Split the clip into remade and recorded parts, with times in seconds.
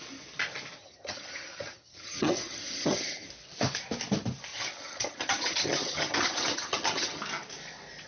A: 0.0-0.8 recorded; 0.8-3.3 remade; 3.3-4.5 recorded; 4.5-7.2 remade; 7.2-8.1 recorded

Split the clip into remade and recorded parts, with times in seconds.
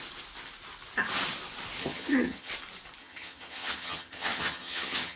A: 0.0-1.8 recorded; 1.8-2.5 remade; 2.5-3.0 recorded; 3.0-5.2 remade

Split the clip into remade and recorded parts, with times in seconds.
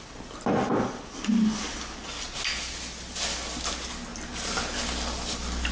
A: 0.0-5.7 recorded